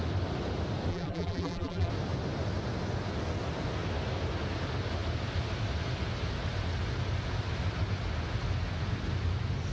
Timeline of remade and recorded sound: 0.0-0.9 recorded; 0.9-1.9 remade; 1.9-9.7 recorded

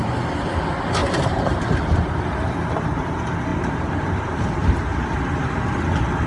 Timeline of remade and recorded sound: 0.0-1.0 recorded; 1.0-2.1 remade; 2.1-3.5 recorded; 3.5-4.4 remade; 4.4-6.3 recorded

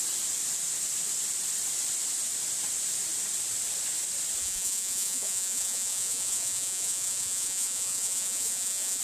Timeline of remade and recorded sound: 0.0-4.4 recorded; 4.4-9.0 remade

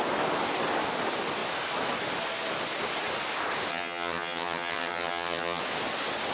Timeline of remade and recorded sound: 0.0-3.7 recorded; 3.7-5.6 remade; 5.6-6.3 recorded

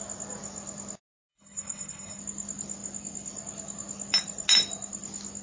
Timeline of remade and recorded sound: 0.0-1.3 recorded; 1.3-2.2 remade; 2.2-5.4 recorded

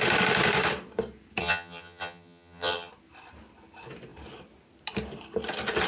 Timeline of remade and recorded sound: 0.0-1.4 recorded; 1.4-2.9 remade; 2.9-5.9 recorded